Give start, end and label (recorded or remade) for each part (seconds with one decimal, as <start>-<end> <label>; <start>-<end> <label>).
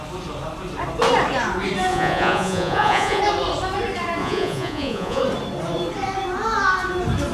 0.0-1.9 recorded; 1.9-3.2 remade; 3.2-4.2 recorded; 4.2-5.2 remade; 5.2-7.3 recorded